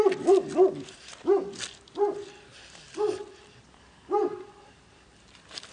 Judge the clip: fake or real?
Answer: real